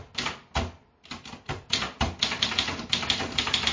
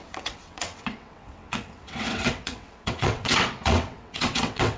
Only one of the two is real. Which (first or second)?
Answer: first